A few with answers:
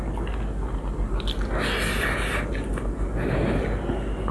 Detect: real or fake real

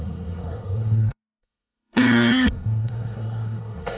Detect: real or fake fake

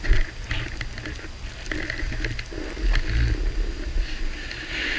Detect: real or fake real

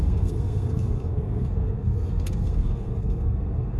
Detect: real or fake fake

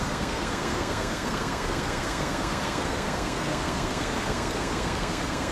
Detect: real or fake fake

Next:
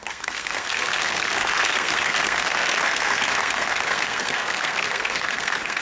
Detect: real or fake fake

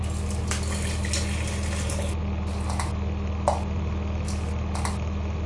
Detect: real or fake real